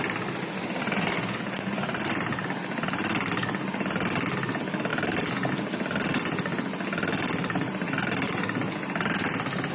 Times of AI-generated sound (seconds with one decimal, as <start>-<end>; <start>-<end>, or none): none